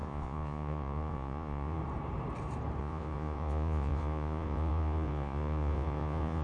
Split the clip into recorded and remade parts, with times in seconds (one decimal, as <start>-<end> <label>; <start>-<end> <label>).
0.0-1.8 remade; 1.8-2.8 recorded; 2.8-6.4 remade